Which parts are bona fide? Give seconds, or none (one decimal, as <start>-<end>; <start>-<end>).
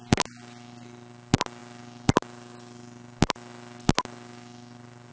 0.0-5.1